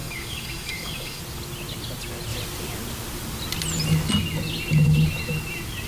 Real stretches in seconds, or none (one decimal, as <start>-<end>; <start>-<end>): 1.2-5.9